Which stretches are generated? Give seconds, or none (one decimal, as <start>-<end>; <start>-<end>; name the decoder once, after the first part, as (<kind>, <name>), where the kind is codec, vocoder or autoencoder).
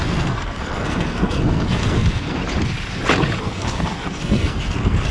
0.0-2.4 (codec, SNAC); 3.4-5.1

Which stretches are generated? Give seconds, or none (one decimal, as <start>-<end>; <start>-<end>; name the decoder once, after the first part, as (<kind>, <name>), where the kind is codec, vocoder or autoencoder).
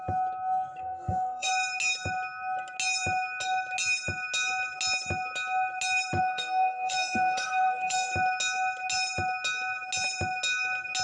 0.8-1.5 (codec, SNAC); 6.2-8.1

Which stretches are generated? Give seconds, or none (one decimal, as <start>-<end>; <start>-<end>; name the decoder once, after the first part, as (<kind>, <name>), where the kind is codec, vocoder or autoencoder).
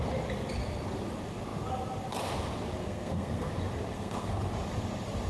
2.8-3.5 (codec, SNAC); 3.9-4.4